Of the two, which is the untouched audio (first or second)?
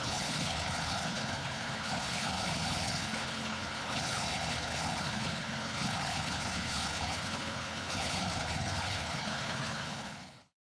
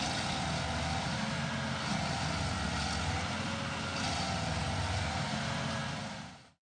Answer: second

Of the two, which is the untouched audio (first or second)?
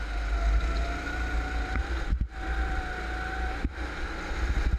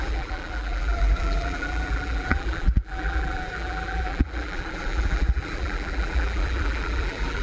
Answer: first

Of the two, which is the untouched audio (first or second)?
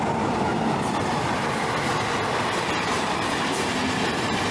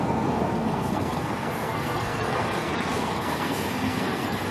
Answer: first